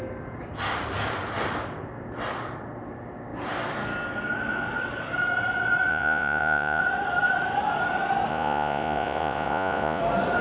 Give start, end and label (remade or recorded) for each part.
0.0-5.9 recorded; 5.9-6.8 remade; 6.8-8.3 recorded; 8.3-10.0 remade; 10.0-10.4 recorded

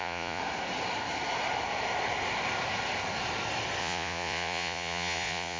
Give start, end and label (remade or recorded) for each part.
0.0-0.4 remade; 0.4-3.8 recorded; 3.8-5.6 remade

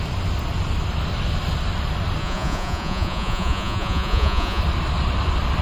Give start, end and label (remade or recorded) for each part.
0.0-2.2 recorded; 2.2-4.6 remade; 4.6-5.6 recorded

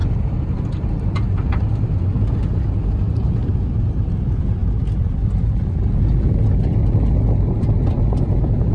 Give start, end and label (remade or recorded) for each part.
0.0-8.7 recorded

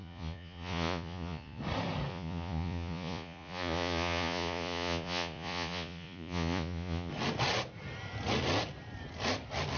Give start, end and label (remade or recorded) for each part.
0.0-1.6 remade; 1.6-2.1 recorded; 2.1-7.1 remade; 7.1-9.8 recorded

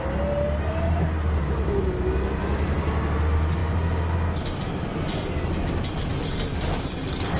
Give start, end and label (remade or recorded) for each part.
0.0-7.4 recorded

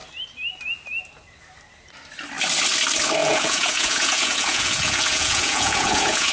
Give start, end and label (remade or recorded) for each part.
0.0-3.2 recorded; 3.2-6.3 remade